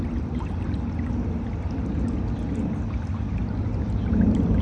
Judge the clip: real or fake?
real